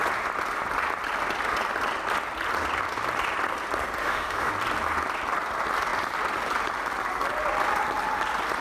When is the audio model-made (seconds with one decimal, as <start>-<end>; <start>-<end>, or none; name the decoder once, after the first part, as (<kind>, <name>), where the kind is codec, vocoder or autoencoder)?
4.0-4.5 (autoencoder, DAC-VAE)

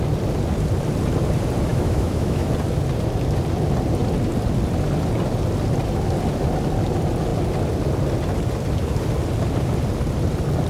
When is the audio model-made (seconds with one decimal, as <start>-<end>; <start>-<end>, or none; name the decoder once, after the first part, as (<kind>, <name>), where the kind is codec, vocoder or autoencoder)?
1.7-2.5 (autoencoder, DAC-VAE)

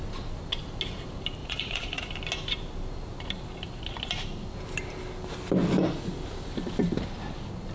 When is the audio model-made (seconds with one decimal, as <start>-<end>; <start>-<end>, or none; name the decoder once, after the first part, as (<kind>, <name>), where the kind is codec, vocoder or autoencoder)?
1.4-2.1 (vocoder, Vocos)

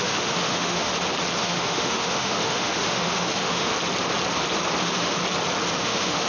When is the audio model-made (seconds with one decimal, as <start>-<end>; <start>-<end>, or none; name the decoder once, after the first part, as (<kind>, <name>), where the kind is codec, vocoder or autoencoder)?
0.0-0.9 (autoencoder, DAC-VAE); 1.4-3.7; 4.8-5.2; 5.8-6.3